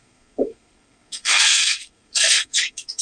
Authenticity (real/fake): fake